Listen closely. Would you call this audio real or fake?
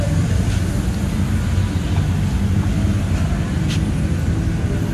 real